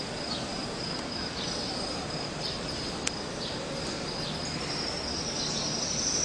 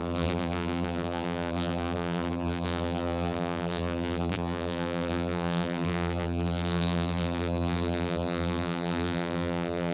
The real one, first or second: first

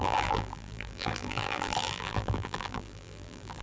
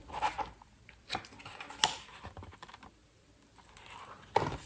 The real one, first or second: second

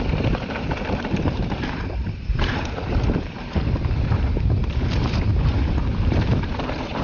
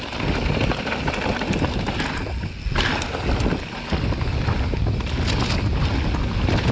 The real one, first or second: second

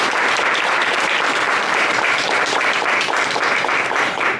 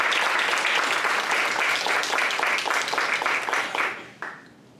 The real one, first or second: second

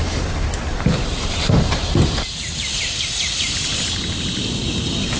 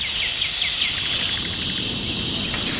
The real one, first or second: second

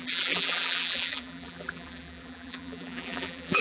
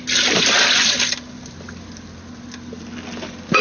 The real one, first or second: second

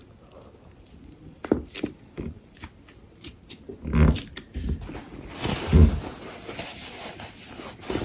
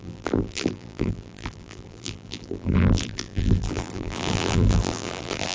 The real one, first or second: first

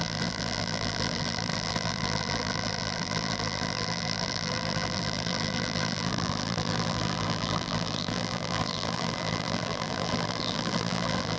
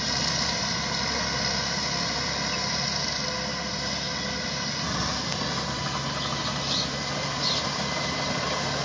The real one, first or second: second